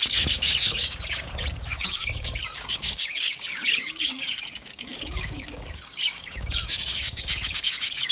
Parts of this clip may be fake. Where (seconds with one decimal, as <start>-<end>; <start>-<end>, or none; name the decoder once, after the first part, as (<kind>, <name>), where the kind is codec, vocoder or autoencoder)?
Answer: 0.0-8.1 (codec, DAC)